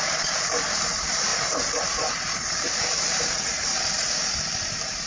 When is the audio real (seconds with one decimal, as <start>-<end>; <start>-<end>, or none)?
3.7-4.6